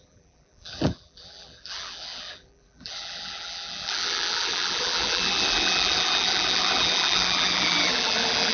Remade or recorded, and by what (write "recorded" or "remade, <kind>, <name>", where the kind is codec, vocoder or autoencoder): remade, vocoder, BigVGAN v2